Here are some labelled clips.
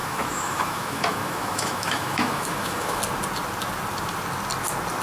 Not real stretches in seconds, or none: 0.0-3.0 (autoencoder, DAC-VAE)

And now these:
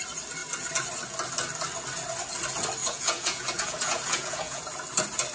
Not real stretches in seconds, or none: 2.8-4.6 (vocoder, Vocos)